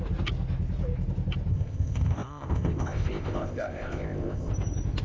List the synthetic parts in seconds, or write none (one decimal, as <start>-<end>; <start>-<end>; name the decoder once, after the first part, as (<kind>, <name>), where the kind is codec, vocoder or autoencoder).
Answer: 1.5-4.5 (codec, ZipCodec)